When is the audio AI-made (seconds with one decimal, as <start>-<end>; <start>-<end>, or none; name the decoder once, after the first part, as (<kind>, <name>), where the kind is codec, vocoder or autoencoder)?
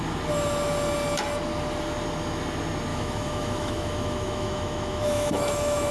2.9-5.9 (autoencoder, DAC-VAE)